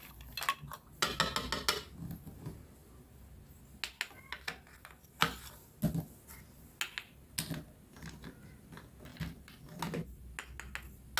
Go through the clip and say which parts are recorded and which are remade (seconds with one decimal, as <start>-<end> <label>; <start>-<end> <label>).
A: 0.0-11.2 recorded